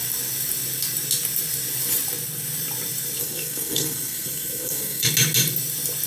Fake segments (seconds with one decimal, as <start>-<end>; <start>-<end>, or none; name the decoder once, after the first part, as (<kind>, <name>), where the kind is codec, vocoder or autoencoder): 3.2-5.1 (codec, SNAC)